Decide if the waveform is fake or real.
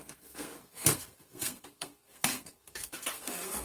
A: fake